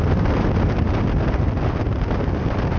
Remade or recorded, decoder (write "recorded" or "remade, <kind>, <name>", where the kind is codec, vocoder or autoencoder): recorded